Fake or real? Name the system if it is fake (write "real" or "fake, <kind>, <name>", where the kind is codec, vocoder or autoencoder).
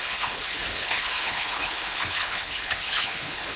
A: fake, codec, HILCodec